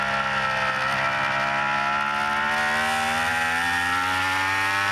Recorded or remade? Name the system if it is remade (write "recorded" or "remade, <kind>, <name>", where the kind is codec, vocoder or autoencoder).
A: recorded